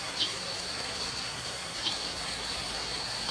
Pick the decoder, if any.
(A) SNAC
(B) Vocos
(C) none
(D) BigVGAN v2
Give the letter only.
A